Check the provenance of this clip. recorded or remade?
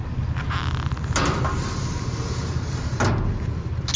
recorded